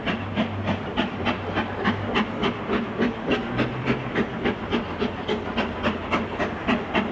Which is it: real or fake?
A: real